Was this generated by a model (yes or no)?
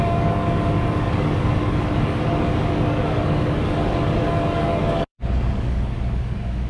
yes